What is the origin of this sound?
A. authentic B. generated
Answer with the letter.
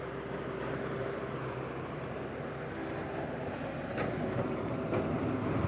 A